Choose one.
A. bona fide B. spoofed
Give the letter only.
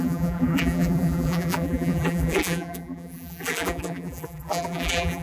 B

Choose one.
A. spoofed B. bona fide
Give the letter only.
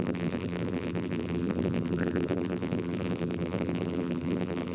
A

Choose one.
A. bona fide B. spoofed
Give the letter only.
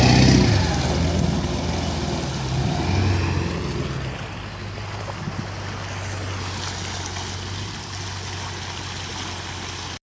A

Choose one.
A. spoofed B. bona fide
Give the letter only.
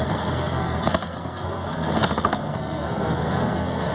A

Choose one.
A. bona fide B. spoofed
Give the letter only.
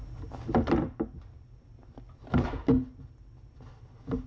A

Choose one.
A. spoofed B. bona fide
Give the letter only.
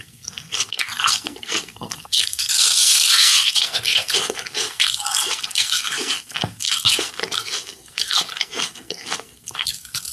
A